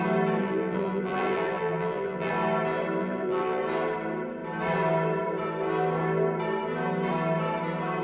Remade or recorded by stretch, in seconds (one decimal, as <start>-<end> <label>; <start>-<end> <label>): 0.0-0.4 recorded; 0.4-2.3 remade; 2.3-3.0 recorded; 3.0-3.6 remade; 3.6-8.0 recorded